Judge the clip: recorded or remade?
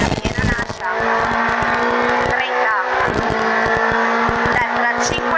recorded